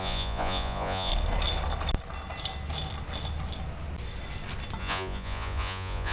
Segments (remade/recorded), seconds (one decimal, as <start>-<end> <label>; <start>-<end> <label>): 0.0-1.1 remade; 1.1-4.8 recorded; 4.8-6.1 remade